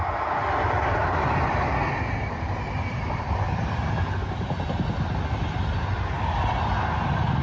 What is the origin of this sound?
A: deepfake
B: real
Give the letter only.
B